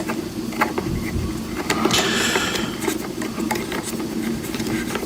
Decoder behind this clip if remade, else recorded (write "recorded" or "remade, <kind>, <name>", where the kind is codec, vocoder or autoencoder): recorded